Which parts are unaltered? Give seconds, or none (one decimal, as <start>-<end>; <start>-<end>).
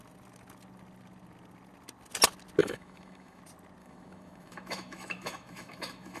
0.0-2.6; 3.4-3.8